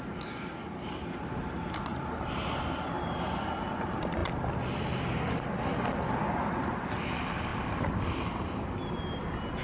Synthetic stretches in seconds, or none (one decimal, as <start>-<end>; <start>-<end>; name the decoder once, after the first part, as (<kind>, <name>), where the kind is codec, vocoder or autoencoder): none